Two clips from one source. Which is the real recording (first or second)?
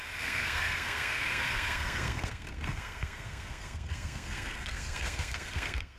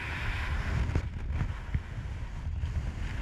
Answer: second